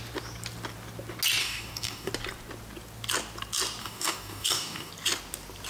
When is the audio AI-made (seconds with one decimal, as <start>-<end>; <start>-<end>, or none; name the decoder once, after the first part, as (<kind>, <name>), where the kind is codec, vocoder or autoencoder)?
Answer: 1.4-2.1 (codec, DAC); 3.8-4.9